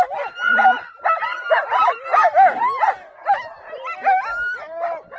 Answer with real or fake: real